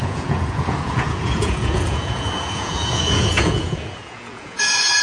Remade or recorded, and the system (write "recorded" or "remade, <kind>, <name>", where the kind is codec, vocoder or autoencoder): remade, vocoder, Vocos